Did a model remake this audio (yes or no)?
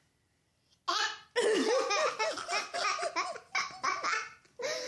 no